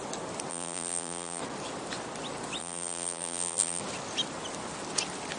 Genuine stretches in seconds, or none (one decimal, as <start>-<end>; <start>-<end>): 0.0-0.5; 1.4-2.6; 3.8-5.4